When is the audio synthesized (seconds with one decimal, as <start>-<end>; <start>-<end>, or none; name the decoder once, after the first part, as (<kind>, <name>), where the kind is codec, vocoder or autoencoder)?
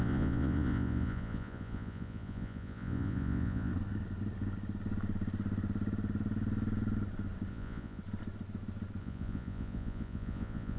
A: 0.0-3.7 (vocoder, Vocos); 7.5-8.0; 9.0-10.8